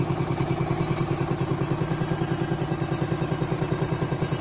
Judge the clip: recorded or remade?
recorded